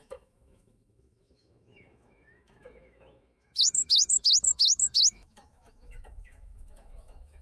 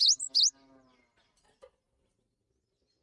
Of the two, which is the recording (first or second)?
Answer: second